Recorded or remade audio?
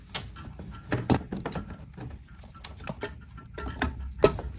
recorded